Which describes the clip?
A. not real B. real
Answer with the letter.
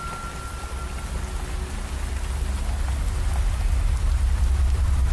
B